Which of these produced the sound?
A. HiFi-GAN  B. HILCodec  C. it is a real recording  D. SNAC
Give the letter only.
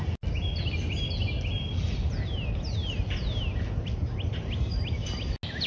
C